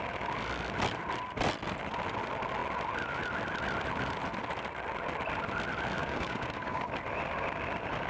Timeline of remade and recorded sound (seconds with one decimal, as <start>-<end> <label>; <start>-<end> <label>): 0.0-6.0 recorded; 6.0-6.8 remade; 6.8-8.1 recorded